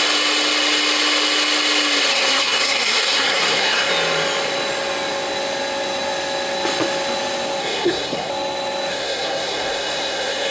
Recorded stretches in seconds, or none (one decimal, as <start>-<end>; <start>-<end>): 0.0-2.1; 3.9-7.6; 8.3-8.9